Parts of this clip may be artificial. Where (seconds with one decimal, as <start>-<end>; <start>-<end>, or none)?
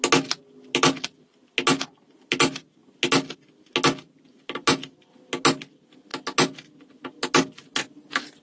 none